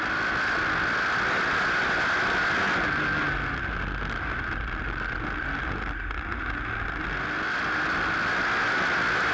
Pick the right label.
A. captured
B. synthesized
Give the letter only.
A